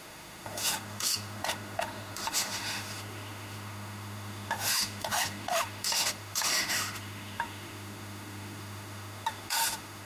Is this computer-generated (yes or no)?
yes